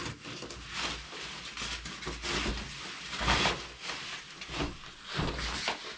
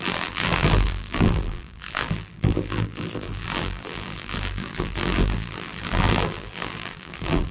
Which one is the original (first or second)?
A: first